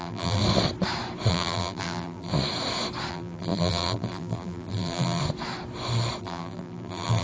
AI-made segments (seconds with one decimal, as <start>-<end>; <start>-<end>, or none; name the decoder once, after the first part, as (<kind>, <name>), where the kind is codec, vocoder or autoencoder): 0.0-0.4 (vocoder, BigVGAN v2); 1.3-2.3; 3.1-5.2; 6.2-7.2